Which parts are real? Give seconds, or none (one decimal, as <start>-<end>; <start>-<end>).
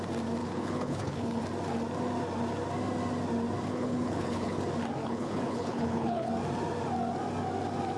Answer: 0.0-0.4; 1.4-3.7; 4.6-5.0; 6.3-8.0